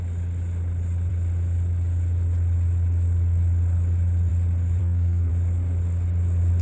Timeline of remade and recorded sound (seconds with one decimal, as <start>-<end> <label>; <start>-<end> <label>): 0.0-4.8 recorded; 4.8-5.3 remade; 5.3-6.6 recorded